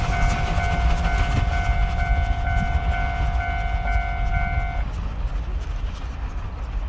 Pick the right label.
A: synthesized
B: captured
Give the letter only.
B